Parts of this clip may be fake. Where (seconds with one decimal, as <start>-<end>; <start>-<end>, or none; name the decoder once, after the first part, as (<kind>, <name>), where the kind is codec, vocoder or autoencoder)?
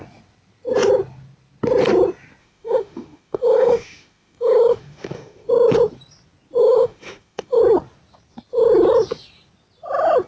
2.4-5.5 (autoencoder, DAC-VAE); 6.6-7.6